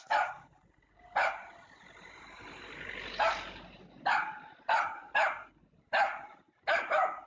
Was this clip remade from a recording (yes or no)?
no